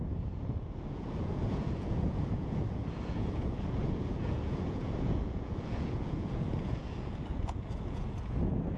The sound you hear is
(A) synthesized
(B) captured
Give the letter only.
A